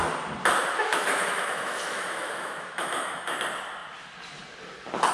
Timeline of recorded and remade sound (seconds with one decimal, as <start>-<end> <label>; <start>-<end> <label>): 0.0-0.8 recorded; 0.8-3.4 remade; 3.4-5.1 recorded